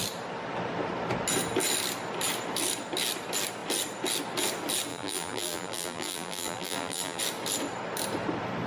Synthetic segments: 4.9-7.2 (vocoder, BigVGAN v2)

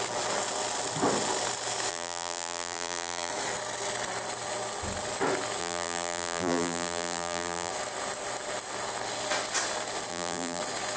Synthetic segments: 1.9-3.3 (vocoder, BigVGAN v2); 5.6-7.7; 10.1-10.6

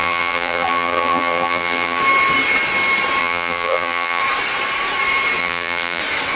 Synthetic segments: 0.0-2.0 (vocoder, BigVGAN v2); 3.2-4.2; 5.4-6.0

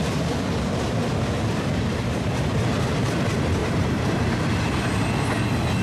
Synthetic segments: 1.9-2.6 (vocoder, BigVGAN v2); 3.6-4.3